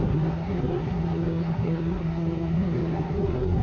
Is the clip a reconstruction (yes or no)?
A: yes